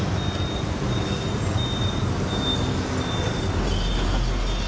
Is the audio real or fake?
real